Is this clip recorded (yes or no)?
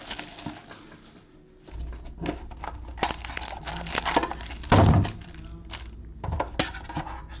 yes